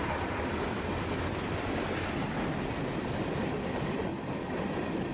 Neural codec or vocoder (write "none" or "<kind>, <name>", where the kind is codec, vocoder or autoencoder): none